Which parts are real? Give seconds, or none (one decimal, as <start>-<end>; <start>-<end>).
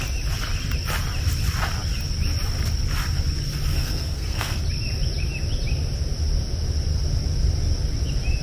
0.0-3.7; 4.6-8.4